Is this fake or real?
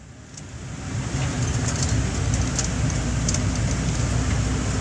real